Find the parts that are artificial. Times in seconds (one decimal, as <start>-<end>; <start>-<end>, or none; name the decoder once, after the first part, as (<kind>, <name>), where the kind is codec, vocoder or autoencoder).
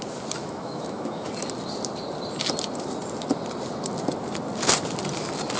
0.4-1.3 (autoencoder, DAC-VAE)